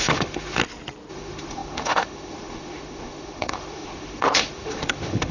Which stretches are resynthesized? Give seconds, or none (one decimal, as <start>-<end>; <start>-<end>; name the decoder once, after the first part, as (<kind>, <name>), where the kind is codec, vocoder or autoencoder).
0.0-0.6 (autoencoder, DAC-VAE); 1.1-5.3

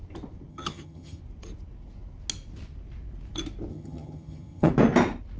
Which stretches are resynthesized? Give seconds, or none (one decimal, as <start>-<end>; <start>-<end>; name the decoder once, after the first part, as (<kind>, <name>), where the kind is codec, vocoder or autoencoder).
0.5-1.2 (vocoder, HiFi-GAN); 3.7-4.7

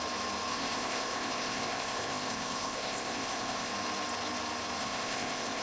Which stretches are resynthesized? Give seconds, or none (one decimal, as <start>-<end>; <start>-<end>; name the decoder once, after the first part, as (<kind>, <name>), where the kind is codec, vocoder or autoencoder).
0.5-3.7 (codec, ZipCodec); 4.8-5.6

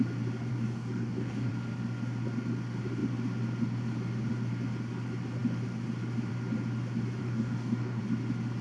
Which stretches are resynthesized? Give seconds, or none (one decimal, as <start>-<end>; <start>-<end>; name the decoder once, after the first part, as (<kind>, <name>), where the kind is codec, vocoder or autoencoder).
0.5-1.5 (codec, DAC); 7.2-8.0

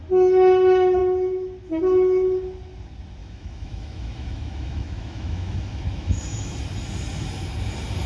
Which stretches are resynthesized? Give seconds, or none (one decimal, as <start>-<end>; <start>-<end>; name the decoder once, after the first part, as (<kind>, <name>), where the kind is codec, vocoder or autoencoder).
3.2-6.6 (autoencoder, DAC-VAE)

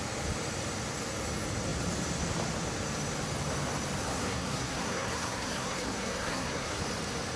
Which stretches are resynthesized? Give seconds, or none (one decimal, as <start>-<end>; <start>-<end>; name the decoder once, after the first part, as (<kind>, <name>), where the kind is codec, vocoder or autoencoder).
4.0-6.8 (codec, SNAC)